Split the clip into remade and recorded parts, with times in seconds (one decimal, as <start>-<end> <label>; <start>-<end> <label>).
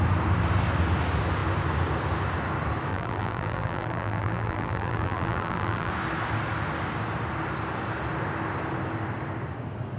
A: 0.0-2.9 recorded; 2.9-5.9 remade; 5.9-10.0 recorded